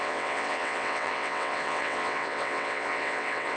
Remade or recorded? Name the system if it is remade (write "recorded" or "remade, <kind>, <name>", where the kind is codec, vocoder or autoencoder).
remade, vocoder, WaveNeXt